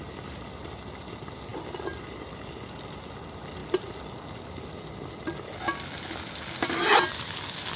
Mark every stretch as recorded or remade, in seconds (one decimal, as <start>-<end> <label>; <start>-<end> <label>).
0.0-7.8 recorded